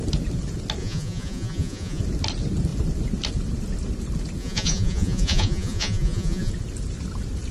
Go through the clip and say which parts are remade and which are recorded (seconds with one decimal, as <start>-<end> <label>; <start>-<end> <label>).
0.0-0.8 recorded; 0.8-2.0 remade; 2.0-4.4 recorded; 4.4-6.5 remade; 6.5-7.5 recorded